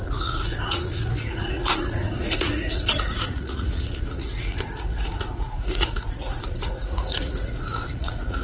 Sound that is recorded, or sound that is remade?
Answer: remade